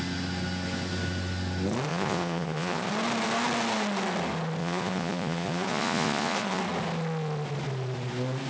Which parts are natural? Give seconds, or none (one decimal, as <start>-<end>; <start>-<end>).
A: 0.0-1.9; 2.9-4.6; 6.6-8.5